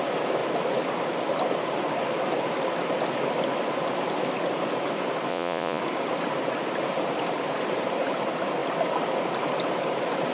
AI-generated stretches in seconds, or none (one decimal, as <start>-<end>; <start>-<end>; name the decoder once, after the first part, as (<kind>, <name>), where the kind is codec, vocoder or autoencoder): 5.3-5.8 (vocoder, Vocos)